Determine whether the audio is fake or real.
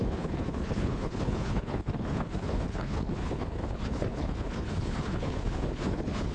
fake